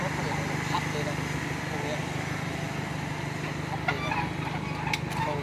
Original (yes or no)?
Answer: yes